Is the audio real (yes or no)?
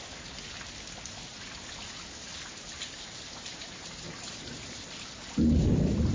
yes